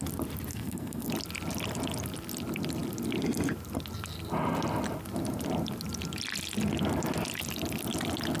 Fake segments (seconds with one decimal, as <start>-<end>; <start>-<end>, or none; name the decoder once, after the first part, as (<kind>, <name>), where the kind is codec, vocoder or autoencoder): 0.5-1.1 (codec, SNAC)